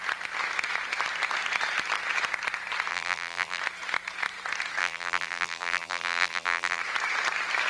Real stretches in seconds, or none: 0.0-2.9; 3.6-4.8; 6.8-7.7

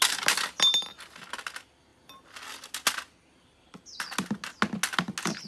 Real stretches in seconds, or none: 0.0-5.5

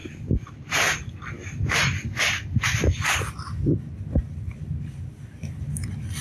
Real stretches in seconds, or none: none

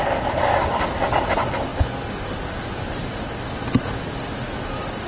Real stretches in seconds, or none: 0.0-5.1

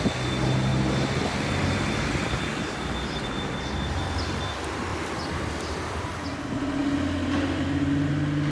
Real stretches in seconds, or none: 0.0-8.5

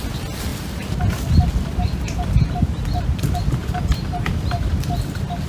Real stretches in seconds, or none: 0.0-3.6; 4.7-5.5

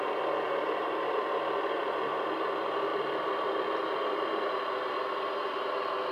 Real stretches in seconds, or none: 1.8-2.3

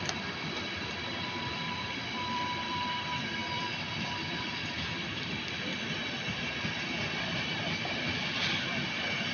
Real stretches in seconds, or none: 6.0-7.1